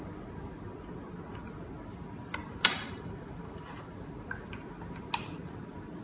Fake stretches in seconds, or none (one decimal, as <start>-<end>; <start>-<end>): 2.4-4.3